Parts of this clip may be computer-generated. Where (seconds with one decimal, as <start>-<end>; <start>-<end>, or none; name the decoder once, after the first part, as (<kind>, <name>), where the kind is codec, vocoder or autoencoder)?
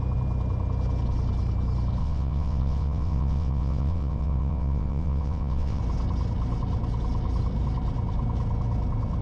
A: 2.0-5.8 (vocoder, WaveNeXt)